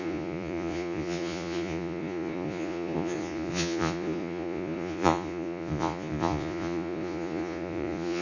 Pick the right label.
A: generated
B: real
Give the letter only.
A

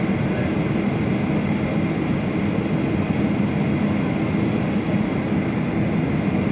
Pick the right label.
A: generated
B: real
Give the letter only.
B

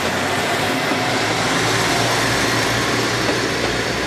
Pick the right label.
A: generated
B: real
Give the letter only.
B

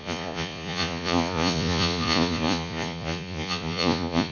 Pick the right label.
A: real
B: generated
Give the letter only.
B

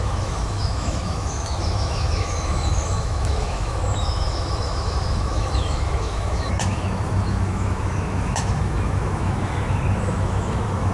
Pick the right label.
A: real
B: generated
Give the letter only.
B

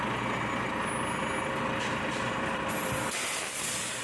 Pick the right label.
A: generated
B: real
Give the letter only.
B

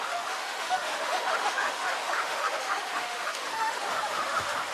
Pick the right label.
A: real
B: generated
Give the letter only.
B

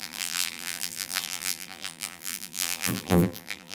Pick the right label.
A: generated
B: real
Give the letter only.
A